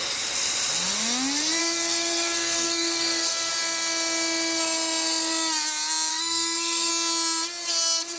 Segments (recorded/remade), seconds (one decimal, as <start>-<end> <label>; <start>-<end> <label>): 0.0-1.6 recorded; 1.6-3.5 remade; 3.5-6.1 recorded; 6.1-6.9 remade; 6.9-8.2 recorded